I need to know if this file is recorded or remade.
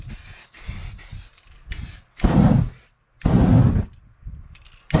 recorded